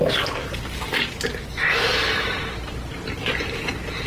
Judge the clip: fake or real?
real